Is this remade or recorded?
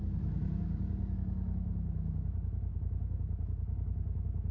remade